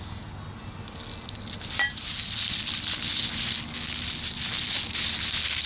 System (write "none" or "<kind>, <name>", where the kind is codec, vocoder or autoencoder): none